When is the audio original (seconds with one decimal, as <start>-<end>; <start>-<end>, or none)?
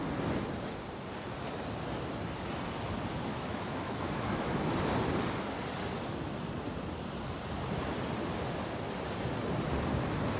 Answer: 0.0-3.3; 4.6-10.4